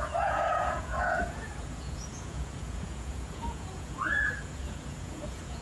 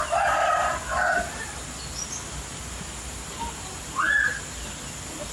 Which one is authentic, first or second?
second